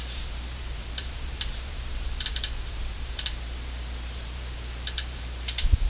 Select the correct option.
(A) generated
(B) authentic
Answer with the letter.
A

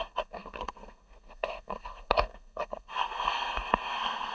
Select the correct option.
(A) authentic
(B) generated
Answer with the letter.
B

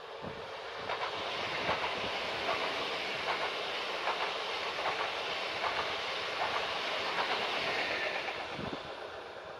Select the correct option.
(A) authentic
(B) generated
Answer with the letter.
A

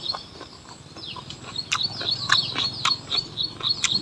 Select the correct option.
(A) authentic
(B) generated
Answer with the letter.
A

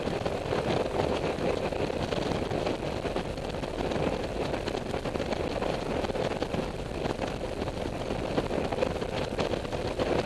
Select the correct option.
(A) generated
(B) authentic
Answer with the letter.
B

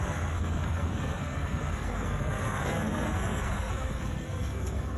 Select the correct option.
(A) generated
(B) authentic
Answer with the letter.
A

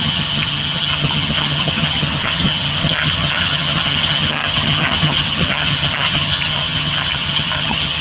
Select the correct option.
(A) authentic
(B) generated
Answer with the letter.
B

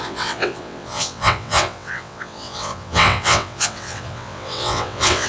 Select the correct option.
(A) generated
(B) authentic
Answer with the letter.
A